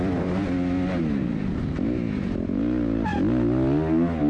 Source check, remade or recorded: recorded